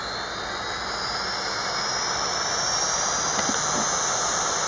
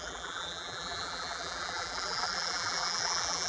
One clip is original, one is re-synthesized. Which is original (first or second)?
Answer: first